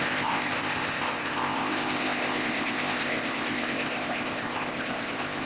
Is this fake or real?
fake